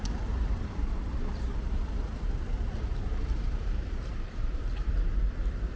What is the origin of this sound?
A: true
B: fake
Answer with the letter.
B